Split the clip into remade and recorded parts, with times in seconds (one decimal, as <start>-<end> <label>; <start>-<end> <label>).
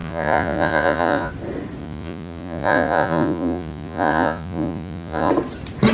0.0-1.3 remade; 1.3-1.8 recorded; 1.8-5.3 remade; 5.3-5.9 recorded